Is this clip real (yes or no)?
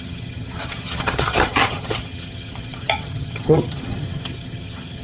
no